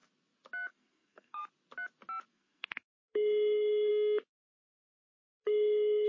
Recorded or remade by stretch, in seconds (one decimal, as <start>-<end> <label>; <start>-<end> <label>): 0.0-0.7 recorded; 0.7-1.4 remade; 1.4-2.3 recorded; 2.3-3.9 remade; 3.9-4.7 recorded; 4.7-6.1 remade